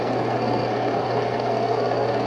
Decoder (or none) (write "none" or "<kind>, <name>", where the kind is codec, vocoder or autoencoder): codec, SNAC